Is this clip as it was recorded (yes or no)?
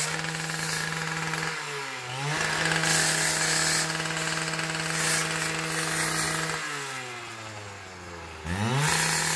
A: yes